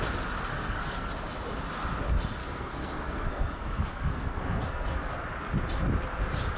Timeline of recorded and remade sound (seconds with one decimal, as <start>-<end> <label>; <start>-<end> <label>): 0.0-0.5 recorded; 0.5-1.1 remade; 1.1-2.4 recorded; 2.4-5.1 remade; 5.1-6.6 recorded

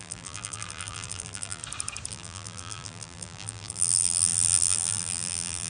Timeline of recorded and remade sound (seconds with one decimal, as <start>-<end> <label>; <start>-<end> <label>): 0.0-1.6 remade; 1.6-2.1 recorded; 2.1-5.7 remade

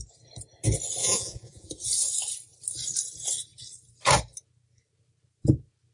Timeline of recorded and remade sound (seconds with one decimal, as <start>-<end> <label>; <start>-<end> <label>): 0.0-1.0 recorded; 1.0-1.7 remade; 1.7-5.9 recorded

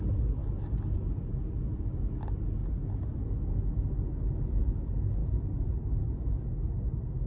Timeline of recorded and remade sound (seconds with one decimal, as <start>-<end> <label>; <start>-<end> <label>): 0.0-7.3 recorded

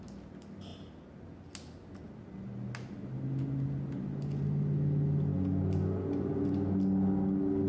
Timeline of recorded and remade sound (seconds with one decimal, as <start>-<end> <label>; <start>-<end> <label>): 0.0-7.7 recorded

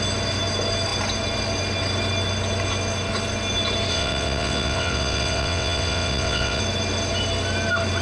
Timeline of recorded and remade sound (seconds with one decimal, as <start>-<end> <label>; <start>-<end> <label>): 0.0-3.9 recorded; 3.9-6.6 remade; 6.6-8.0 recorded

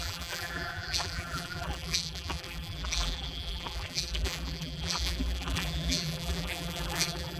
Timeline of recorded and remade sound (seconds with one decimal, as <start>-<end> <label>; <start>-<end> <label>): 0.0-7.4 remade

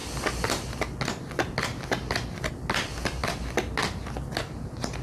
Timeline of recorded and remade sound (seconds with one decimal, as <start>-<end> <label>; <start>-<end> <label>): 0.0-5.0 recorded